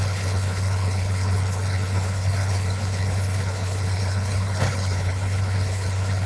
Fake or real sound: fake